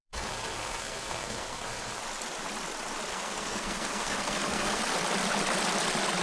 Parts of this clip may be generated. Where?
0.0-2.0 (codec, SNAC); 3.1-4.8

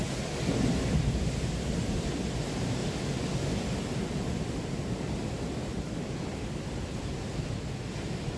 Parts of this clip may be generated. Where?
none

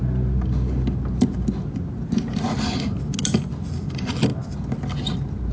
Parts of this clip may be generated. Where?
none

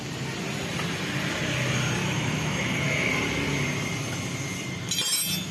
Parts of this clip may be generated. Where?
2.0-3.1 (autoencoder, DAC-VAE)

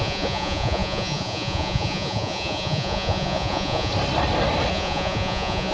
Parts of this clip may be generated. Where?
0.0-3.9 (vocoder, Vocos); 4.7-5.7

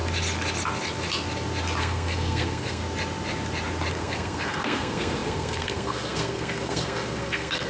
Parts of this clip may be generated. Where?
1.8-2.8 (codec, SNAC); 3.9-7.7